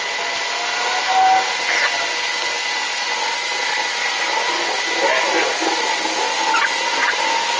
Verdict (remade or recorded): recorded